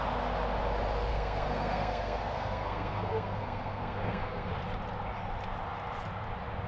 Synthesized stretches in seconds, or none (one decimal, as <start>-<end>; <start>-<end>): 1.1-4.5